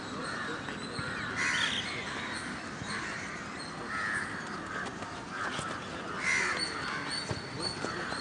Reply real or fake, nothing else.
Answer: real